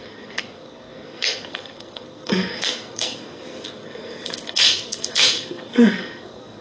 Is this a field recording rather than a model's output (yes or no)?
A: no